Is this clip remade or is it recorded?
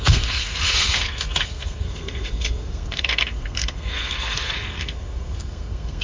remade